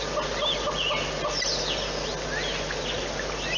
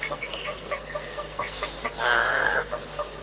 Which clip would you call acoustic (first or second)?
first